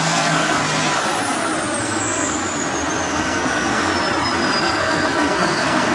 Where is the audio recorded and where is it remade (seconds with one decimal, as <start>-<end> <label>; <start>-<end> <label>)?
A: 0.0-0.6 remade; 0.6-1.8 recorded; 1.8-2.4 remade; 2.4-3.1 recorded; 3.1-3.9 remade; 3.9-4.6 recorded; 4.6-5.9 remade